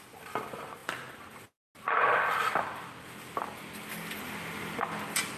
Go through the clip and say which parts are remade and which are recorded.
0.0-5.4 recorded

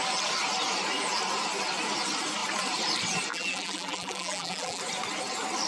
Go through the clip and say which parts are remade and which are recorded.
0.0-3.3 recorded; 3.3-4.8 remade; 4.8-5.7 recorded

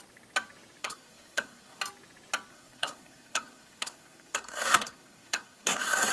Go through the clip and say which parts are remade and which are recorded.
0.0-0.8 recorded; 0.8-1.8 remade; 1.8-2.5 recorded; 2.5-6.1 remade

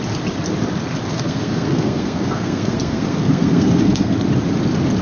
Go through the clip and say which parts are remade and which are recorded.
0.0-1.1 recorded; 1.1-4.1 remade; 4.1-5.0 recorded